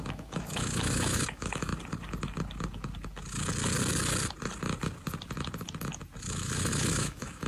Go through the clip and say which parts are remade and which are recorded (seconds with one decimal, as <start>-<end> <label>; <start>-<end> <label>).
0.0-1.7 remade; 1.7-6.2 recorded; 6.2-7.5 remade